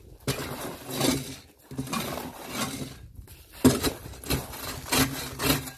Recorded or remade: recorded